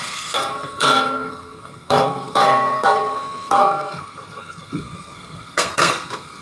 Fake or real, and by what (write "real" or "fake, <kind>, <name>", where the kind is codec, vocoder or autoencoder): fake, codec, SNAC